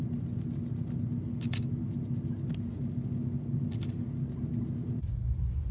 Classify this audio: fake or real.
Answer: real